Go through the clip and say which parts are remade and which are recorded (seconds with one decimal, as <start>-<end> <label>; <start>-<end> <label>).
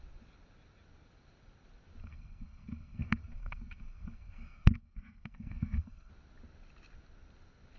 0.0-2.0 recorded; 2.0-6.1 remade; 6.1-7.8 recorded